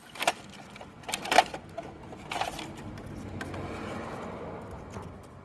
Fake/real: real